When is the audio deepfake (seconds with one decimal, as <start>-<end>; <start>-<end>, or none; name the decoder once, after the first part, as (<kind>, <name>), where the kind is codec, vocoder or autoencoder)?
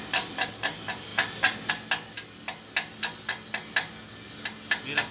none